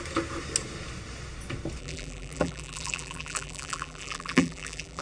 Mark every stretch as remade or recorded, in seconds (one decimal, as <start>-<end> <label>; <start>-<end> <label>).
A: 0.0-1.8 recorded; 1.8-5.0 remade